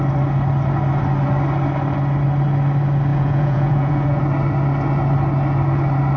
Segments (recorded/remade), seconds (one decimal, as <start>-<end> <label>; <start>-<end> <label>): 0.0-3.1 recorded; 3.1-4.2 remade; 4.2-6.2 recorded